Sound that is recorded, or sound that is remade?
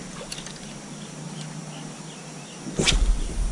recorded